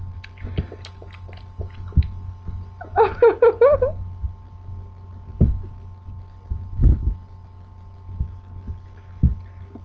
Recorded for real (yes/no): yes